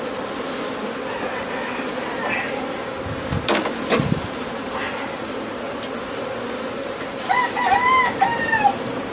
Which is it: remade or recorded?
recorded